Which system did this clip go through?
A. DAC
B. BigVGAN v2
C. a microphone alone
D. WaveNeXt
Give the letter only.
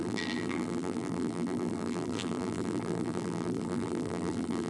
B